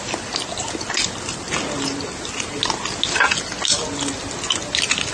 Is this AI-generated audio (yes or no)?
no